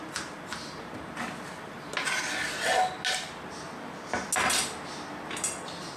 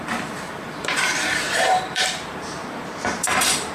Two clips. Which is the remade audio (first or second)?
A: second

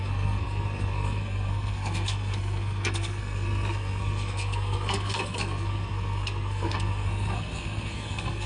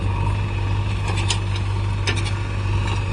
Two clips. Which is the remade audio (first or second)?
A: first